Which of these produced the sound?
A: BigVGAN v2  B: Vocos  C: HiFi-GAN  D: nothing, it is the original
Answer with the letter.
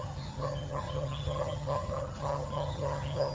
C